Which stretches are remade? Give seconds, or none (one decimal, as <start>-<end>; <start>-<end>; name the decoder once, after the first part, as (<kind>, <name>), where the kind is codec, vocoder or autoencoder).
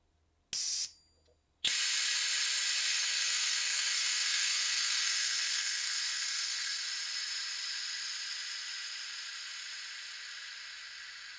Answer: 2.9-6.8 (codec, SNAC)